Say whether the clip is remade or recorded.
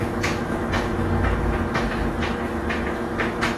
remade